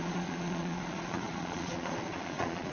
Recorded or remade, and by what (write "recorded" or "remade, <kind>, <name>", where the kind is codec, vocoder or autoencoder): remade, vocoder, Vocos